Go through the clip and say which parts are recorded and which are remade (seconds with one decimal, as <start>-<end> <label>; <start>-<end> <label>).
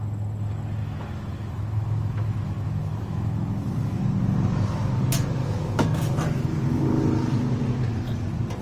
0.0-0.8 recorded; 0.8-4.0 remade; 4.0-5.4 recorded; 5.4-6.8 remade; 6.8-8.6 recorded